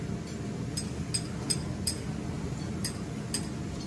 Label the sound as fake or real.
real